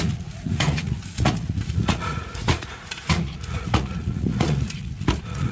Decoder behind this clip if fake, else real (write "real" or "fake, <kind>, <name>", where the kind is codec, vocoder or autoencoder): fake, vocoder, Vocos